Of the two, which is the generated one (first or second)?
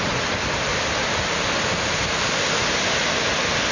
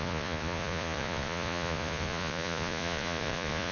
second